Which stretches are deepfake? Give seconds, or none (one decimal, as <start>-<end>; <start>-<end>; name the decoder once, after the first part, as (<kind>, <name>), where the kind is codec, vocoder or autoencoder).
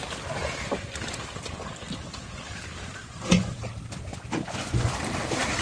3.0-3.6 (vocoder, Vocos); 4.1-4.9